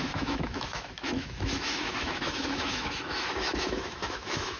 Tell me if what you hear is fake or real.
fake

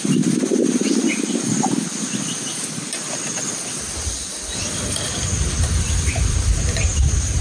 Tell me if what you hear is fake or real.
real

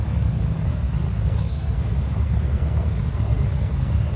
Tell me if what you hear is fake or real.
fake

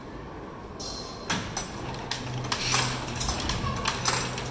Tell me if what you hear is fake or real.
real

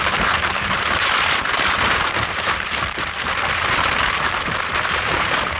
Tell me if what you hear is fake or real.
fake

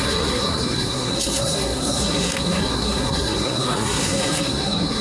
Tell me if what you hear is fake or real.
fake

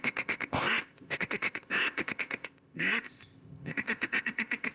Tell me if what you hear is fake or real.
fake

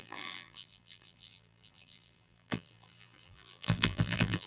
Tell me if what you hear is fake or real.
fake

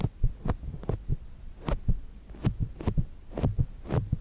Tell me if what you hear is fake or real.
real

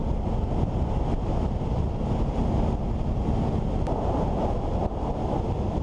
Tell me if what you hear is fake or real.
real